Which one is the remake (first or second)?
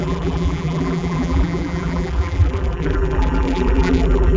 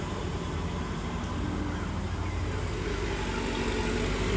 first